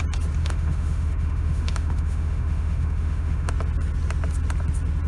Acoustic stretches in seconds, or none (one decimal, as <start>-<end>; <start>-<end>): 0.0-0.4; 3.5-5.1